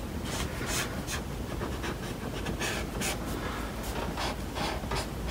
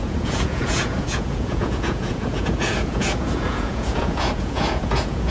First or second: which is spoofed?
second